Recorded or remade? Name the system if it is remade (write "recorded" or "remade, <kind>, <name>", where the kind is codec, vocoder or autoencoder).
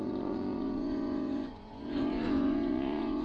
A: remade, vocoder, Vocos